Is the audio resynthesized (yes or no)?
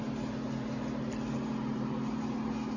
no